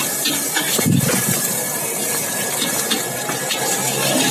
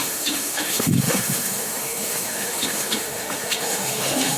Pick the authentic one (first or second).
first